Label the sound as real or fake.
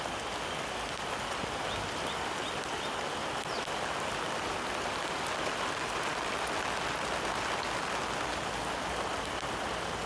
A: real